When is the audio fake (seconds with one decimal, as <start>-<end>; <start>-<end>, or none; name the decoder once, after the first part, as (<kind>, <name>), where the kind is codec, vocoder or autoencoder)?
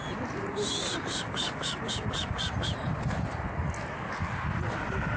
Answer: 0.7-3.6 (vocoder, BigVGAN v2)